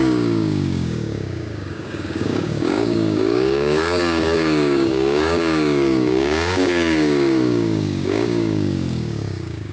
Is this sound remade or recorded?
remade